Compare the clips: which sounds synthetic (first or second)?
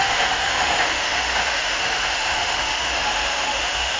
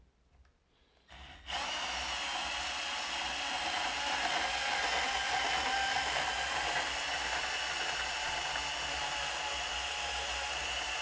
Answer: first